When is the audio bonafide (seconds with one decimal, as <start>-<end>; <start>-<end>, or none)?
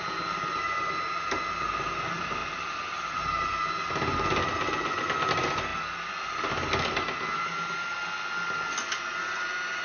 0.0-2.4; 5.3-5.7; 6.5-9.8